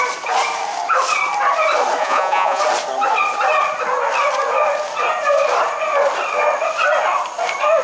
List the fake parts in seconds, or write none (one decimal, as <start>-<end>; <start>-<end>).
2.0-2.6